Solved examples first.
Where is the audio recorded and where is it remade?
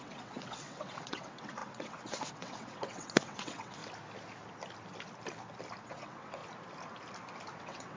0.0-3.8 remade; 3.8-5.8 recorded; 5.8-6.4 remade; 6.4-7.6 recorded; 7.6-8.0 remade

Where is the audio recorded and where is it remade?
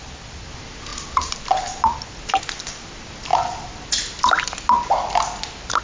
0.0-5.8 recorded